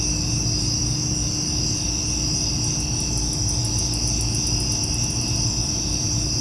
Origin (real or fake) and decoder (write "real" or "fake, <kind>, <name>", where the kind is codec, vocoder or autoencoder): real